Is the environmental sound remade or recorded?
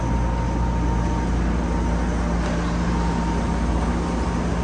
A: recorded